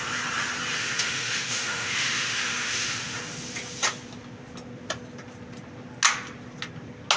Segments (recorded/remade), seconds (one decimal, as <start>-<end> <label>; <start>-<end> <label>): 0.0-0.8 recorded; 0.8-3.2 remade; 3.2-7.2 recorded